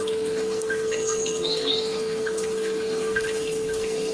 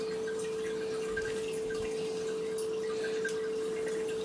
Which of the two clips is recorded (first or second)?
second